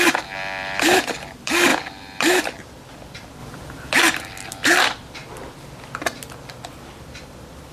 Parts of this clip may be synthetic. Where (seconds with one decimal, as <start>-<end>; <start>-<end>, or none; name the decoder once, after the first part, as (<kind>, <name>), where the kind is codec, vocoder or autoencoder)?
0.0-5.2 (vocoder, BigVGAN v2); 6.9-7.7

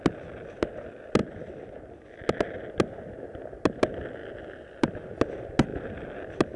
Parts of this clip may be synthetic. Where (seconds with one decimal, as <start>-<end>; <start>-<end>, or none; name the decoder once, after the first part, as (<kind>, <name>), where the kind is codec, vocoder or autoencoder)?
none